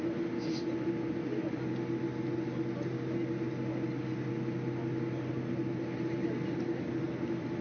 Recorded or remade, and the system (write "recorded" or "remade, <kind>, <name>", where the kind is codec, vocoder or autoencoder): recorded